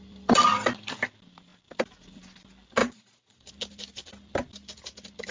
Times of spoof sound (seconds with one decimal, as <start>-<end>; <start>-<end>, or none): 2.8-3.5